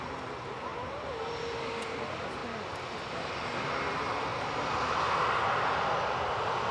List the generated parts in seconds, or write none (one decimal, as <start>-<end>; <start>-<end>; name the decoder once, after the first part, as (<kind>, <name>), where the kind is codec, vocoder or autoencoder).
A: none